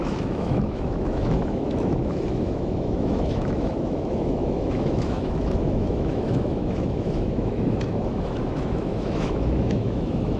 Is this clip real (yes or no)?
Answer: no